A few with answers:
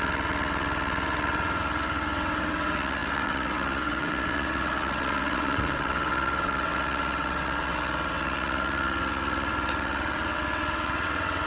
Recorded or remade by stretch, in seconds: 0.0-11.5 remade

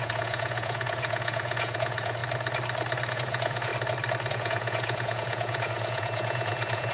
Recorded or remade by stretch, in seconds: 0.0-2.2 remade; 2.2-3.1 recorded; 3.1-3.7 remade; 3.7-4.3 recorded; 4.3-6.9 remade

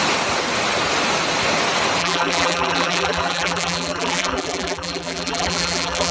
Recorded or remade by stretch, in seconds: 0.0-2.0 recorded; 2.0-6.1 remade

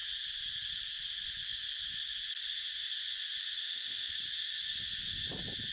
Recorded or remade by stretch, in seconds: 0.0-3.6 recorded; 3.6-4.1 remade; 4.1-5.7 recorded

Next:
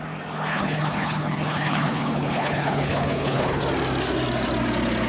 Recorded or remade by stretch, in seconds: 0.0-0.5 recorded; 0.5-3.6 remade; 3.6-5.1 recorded

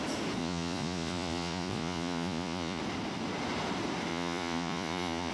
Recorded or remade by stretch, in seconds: 0.0-0.4 recorded; 0.4-2.8 remade; 2.8-4.1 recorded; 4.1-5.3 remade

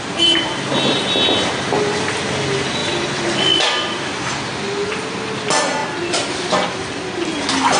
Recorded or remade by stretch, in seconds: 0.0-7.8 recorded

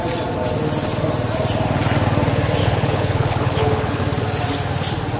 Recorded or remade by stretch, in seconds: 0.0-2.6 recorded; 2.6-4.0 remade; 4.0-5.2 recorded